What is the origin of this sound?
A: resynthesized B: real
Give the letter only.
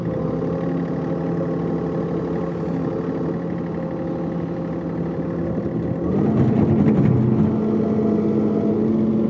B